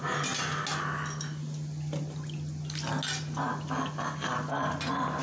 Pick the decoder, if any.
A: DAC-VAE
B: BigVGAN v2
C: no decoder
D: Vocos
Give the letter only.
C